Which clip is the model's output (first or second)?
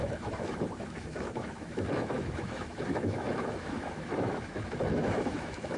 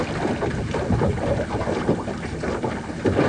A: first